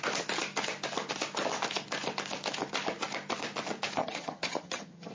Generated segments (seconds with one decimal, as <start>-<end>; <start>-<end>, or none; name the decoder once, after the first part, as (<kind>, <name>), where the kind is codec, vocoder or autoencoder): 4.0-5.1 (vocoder, HiFi-GAN)